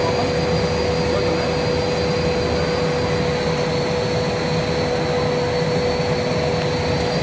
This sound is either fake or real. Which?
real